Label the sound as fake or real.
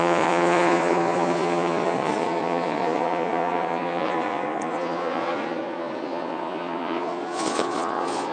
fake